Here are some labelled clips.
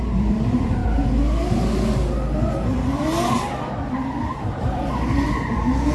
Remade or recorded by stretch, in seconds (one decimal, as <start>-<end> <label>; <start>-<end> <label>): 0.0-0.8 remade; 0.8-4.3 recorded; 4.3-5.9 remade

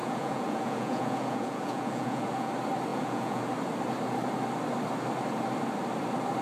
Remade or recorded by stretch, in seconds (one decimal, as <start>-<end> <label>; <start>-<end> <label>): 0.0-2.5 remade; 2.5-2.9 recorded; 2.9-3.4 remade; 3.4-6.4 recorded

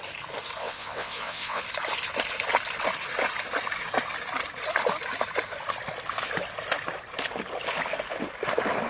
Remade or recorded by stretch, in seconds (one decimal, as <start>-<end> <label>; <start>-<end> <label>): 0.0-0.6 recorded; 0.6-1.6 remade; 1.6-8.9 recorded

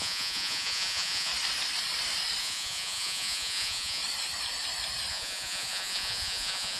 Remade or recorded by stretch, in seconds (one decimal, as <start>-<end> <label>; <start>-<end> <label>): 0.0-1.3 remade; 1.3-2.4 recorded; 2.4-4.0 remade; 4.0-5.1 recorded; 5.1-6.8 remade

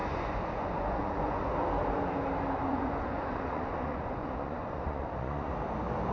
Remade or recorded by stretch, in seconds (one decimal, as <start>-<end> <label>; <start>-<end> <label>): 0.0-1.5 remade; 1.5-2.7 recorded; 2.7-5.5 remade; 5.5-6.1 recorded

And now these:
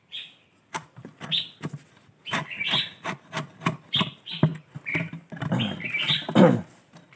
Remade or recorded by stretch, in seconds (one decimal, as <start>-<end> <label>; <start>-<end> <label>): 0.0-7.2 recorded